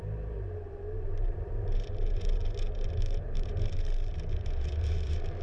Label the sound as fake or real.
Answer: fake